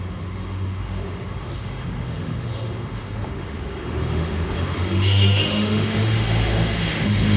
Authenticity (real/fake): fake